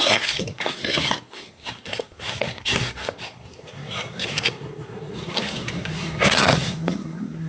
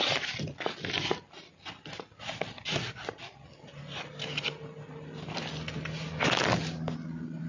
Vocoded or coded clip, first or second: first